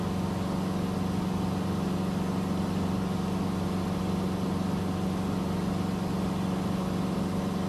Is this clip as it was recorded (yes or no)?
yes